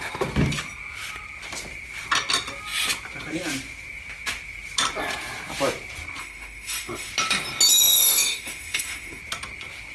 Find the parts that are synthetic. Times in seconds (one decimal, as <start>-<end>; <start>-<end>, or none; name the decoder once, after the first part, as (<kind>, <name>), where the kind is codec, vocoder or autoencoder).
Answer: 6.2-7.1 (autoencoder, DAC-VAE); 7.8-9.2